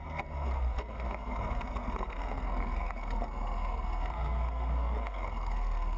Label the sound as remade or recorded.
remade